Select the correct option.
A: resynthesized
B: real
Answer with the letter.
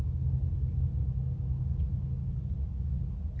B